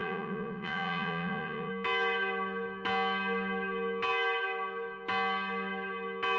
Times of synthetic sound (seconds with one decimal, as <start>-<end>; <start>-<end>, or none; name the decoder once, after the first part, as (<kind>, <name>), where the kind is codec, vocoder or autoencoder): 0.0-1.7 (vocoder, Vocos)